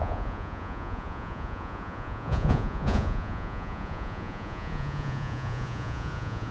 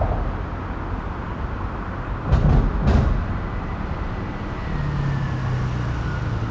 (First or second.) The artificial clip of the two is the first